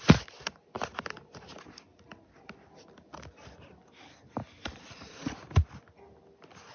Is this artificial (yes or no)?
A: no